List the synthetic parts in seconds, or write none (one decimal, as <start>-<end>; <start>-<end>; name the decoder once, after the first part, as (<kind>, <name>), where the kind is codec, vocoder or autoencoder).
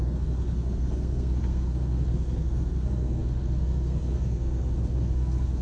0.0-5.6 (codec, SNAC)